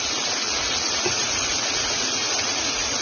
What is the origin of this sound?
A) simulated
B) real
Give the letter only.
A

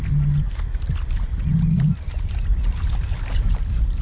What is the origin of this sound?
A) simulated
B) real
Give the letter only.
B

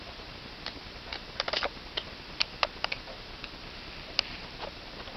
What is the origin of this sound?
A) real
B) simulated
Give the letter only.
A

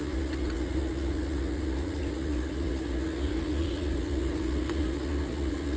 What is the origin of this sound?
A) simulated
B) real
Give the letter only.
A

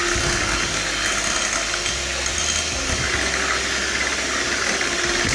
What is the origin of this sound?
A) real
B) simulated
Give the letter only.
A